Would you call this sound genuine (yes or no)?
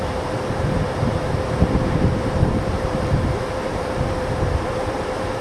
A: no